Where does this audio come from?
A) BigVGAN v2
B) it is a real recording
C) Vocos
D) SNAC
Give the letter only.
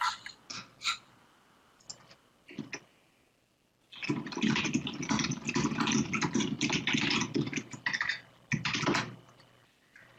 B